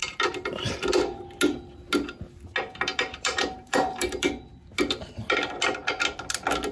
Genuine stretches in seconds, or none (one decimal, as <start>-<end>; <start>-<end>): 0.6-2.9; 4.3-6.7